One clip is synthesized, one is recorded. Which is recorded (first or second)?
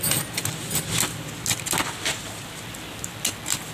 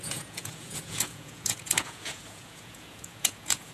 first